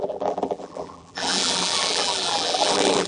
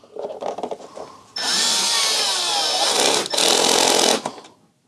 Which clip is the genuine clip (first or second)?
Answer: second